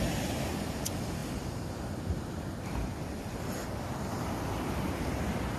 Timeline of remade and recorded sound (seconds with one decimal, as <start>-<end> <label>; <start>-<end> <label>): 0.0-5.6 recorded